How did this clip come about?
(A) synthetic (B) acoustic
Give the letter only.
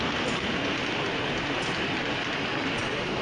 B